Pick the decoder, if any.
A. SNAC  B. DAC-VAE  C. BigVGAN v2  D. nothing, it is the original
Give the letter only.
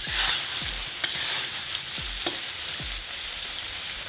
D